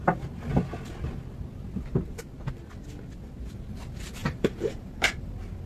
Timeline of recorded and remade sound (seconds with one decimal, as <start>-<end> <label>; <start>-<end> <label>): 0.0-4.2 recorded; 4.2-5.3 remade; 5.3-5.7 recorded